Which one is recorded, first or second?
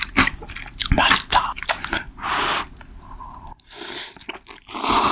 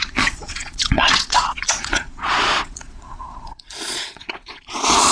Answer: first